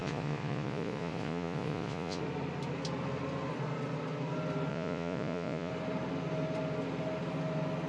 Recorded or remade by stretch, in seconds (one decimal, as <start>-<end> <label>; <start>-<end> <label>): 0.0-2.2 remade; 2.2-4.7 recorded; 4.7-5.7 remade; 5.7-7.9 recorded